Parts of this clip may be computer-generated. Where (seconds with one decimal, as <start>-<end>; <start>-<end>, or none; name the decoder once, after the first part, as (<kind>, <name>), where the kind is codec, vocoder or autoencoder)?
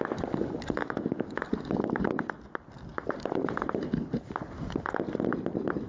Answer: 0.8-1.4 (codec, DAC)